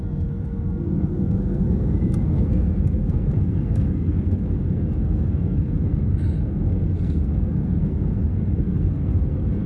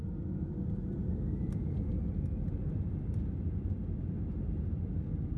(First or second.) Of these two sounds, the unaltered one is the second